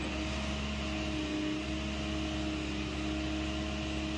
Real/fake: real